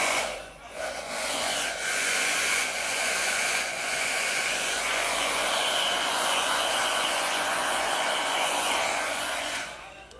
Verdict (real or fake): fake